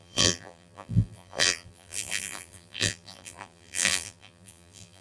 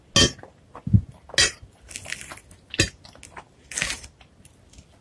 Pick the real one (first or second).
second